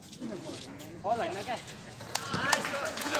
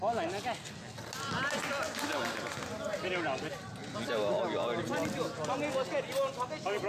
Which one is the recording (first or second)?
second